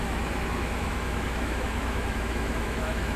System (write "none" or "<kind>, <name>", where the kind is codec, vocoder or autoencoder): autoencoder, DAC-VAE